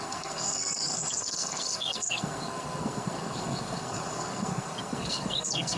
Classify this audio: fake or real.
fake